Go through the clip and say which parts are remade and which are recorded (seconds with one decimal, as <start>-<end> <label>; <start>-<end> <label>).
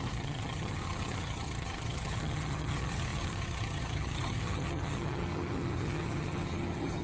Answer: 0.0-7.0 remade